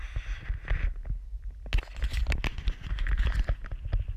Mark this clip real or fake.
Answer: real